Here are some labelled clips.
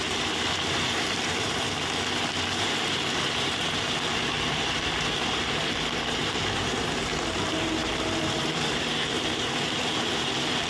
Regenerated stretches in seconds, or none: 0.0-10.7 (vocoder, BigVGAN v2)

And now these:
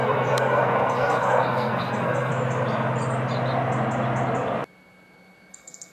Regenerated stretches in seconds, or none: 0.0-2.3 (codec, SNAC); 5.5-5.9

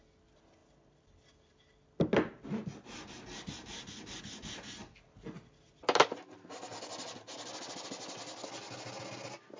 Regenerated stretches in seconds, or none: none

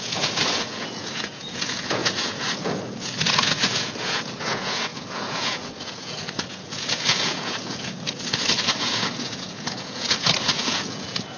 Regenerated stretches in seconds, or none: 0.0-11.4 (vocoder, Vocos)